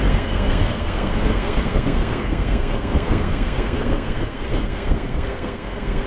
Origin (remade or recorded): remade